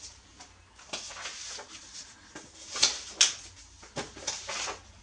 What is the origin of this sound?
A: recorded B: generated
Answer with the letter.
A